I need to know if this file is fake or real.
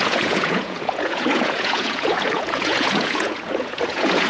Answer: fake